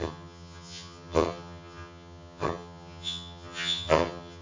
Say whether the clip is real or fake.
fake